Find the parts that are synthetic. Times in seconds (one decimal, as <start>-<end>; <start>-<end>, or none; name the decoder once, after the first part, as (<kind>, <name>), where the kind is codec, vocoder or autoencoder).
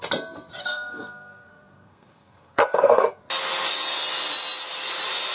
0.6-3.2 (codec, SNAC)